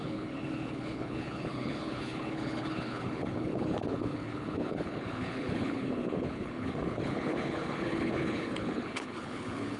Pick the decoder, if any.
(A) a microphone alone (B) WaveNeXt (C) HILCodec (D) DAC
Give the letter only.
C